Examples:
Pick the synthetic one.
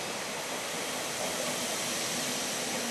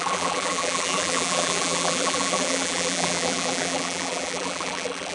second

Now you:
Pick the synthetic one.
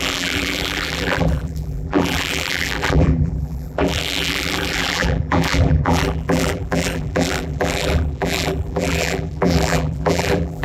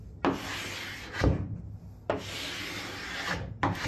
first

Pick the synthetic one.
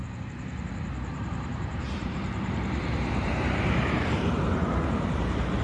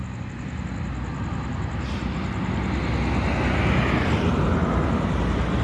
first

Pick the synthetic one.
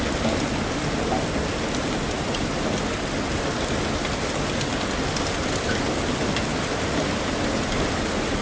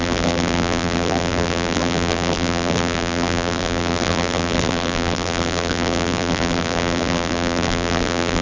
second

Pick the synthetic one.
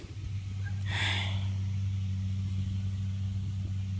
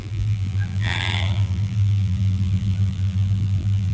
second